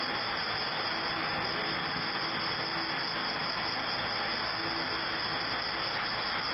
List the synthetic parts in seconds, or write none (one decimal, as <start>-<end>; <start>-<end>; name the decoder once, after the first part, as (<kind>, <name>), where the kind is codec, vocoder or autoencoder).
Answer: 1.2-1.8 (vocoder, BigVGAN v2)